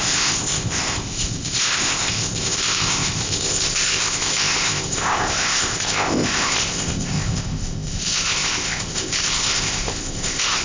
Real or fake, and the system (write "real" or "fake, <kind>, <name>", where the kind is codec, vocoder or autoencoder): fake, codec, ZipCodec